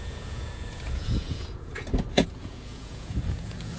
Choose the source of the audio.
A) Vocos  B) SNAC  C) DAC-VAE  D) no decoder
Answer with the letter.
A